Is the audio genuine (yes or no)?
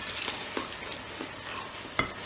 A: yes